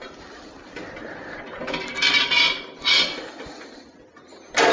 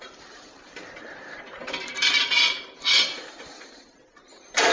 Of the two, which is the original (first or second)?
first